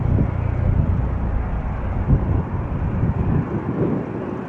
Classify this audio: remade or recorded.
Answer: recorded